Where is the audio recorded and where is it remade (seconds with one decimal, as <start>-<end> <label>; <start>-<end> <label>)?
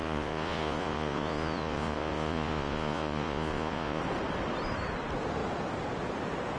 0.0-4.0 remade; 4.0-6.6 recorded